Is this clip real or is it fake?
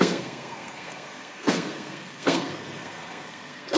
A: fake